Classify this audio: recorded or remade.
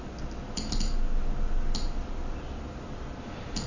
recorded